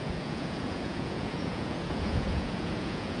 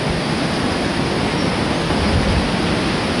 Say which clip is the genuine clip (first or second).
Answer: second